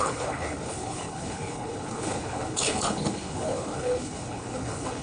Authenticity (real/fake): fake